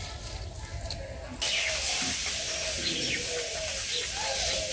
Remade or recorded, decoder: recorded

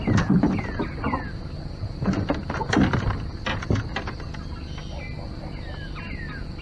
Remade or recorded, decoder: recorded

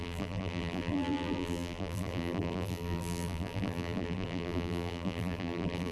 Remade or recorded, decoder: remade, vocoder, BigVGAN v2